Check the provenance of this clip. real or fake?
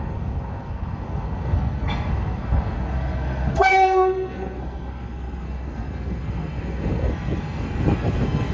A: fake